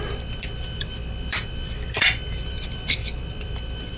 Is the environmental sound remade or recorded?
remade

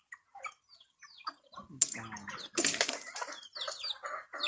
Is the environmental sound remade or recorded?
recorded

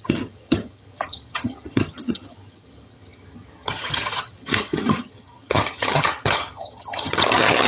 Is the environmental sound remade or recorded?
remade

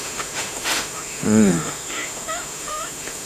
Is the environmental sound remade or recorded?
remade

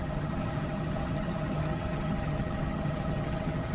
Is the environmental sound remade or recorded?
remade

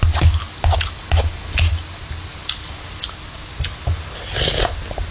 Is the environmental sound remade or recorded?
recorded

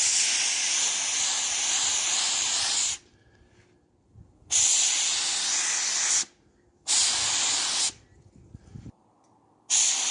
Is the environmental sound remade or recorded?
recorded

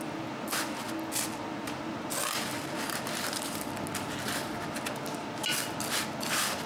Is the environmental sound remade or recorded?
recorded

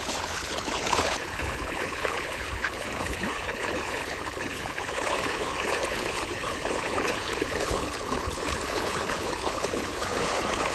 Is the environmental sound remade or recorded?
remade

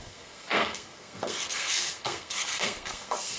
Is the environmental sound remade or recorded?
remade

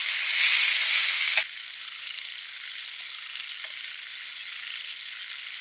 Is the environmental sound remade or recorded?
recorded